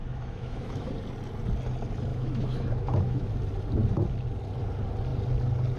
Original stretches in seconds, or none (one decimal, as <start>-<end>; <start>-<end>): 0.9-2.1; 3.3-5.8